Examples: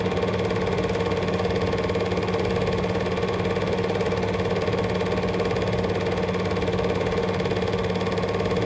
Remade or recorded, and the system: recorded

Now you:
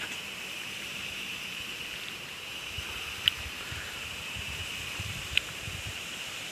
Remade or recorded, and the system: remade, vocoder, BigVGAN v2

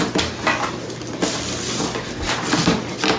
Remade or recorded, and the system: recorded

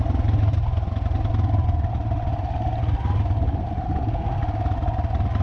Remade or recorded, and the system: recorded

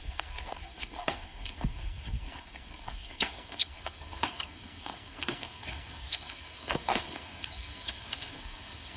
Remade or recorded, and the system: remade, codec, SNAC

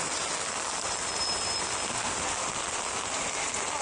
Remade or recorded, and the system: recorded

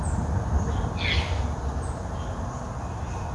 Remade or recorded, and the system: recorded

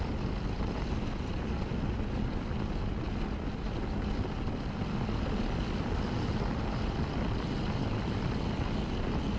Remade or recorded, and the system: recorded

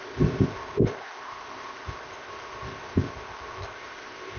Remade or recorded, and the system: remade, codec, ZipCodec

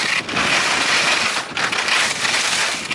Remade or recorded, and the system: recorded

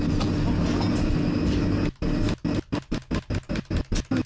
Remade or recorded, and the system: recorded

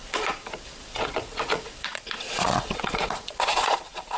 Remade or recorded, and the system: remade, vocoder, Vocos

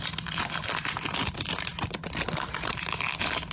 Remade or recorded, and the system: recorded